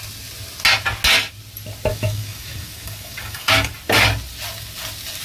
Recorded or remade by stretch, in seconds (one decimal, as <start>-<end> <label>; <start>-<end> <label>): 0.0-1.9 recorded; 1.9-3.7 remade; 3.7-5.2 recorded